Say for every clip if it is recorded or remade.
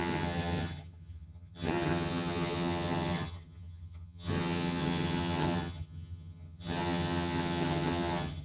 remade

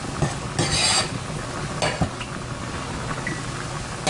recorded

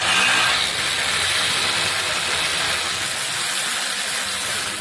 recorded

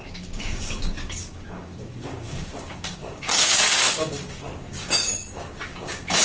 remade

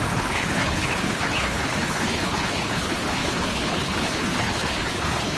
remade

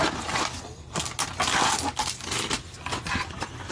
recorded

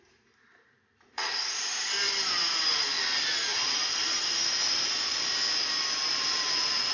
remade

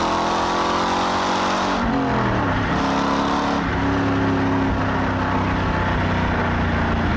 recorded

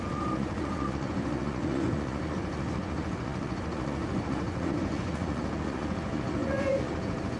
remade